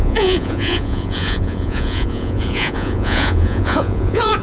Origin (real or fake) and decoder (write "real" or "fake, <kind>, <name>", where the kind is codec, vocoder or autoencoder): fake, vocoder, Vocos